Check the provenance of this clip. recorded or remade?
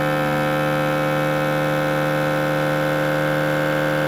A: recorded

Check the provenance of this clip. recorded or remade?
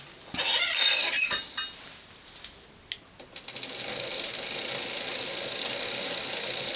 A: recorded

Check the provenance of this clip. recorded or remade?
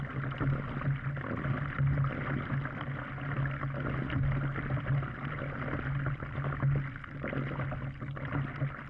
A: recorded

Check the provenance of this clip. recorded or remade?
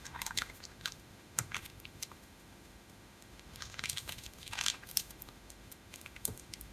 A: remade